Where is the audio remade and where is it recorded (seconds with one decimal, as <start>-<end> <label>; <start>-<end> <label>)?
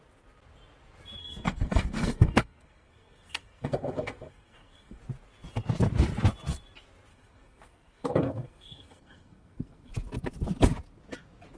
0.0-1.2 recorded; 1.2-5.0 remade; 5.0-7.1 recorded; 7.1-9.9 remade; 9.9-11.6 recorded